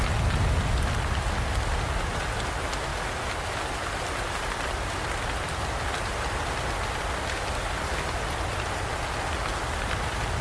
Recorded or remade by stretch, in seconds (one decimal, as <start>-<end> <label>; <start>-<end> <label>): 0.0-10.4 recorded